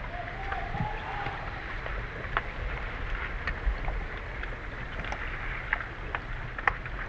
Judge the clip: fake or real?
real